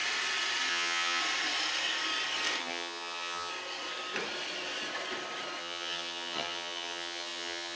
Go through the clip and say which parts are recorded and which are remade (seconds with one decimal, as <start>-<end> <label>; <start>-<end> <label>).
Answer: 0.0-0.7 recorded; 0.7-1.2 remade; 1.2-2.6 recorded; 2.6-3.5 remade; 3.5-5.6 recorded; 5.6-7.8 remade